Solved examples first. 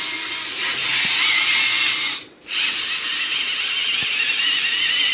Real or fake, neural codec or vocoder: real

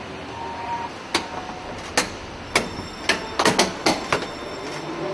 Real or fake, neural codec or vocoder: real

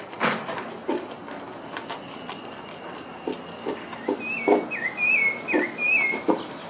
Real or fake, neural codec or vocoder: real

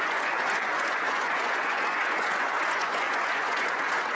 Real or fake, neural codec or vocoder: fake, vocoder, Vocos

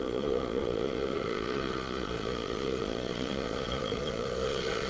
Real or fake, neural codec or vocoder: fake, vocoder, Vocos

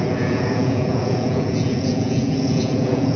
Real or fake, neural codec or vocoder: fake, vocoder, Vocos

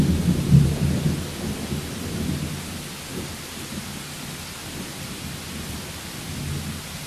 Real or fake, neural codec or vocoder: real